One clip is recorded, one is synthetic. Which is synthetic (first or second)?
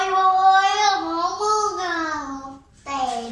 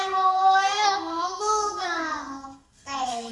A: second